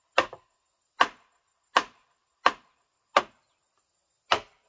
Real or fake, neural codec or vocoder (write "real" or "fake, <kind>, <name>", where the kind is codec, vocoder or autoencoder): real